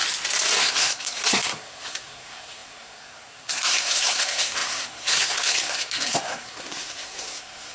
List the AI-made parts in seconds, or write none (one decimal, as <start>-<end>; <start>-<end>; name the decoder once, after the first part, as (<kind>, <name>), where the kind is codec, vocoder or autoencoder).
0.6-7.7 (codec, SNAC)